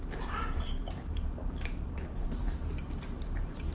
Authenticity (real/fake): fake